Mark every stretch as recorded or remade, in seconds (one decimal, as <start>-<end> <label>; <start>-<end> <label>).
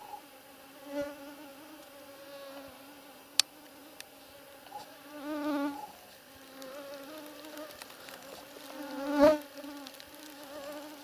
0.0-11.0 recorded